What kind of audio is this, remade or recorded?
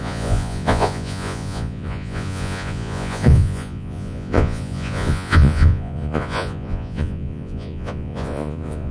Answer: remade